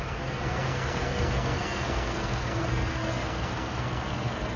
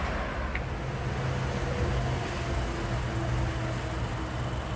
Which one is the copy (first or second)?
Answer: first